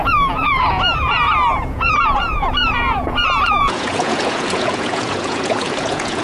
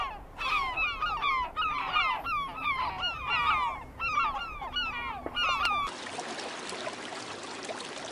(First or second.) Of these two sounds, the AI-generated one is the first